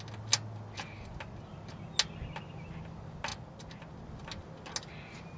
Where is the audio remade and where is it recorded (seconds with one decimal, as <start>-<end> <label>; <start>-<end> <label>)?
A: 0.0-5.4 recorded

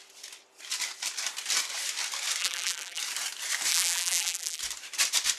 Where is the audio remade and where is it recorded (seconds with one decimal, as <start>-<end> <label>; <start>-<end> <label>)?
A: 0.0-2.4 recorded; 2.4-3.0 remade; 3.0-3.7 recorded; 3.7-4.6 remade; 4.6-5.4 recorded

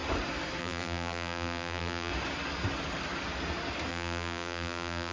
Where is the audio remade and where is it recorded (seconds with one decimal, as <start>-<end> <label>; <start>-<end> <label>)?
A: 0.0-0.6 recorded; 0.6-2.1 remade; 2.1-3.9 recorded; 3.9-5.1 remade

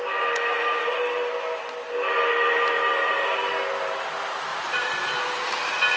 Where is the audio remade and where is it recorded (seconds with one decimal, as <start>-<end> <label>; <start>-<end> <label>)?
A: 0.0-4.5 recorded; 4.5-5.5 remade; 5.5-6.0 recorded

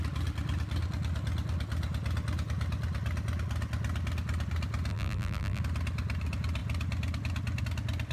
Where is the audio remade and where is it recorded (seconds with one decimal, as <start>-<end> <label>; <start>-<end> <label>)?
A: 0.0-4.9 recorded; 4.9-5.6 remade; 5.6-8.1 recorded

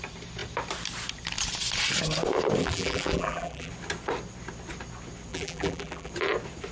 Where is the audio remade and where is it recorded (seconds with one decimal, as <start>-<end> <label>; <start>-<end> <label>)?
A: 0.0-2.6 recorded; 2.6-3.7 remade; 3.7-5.3 recorded; 5.3-6.1 remade; 6.1-6.7 recorded

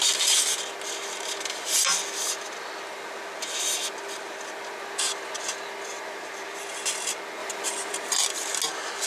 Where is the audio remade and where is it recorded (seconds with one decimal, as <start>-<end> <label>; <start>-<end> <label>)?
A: 0.0-7.4 recorded; 7.4-8.2 remade; 8.2-9.1 recorded